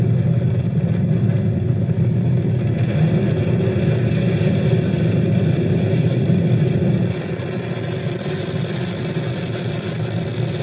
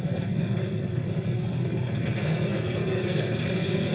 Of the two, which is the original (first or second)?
first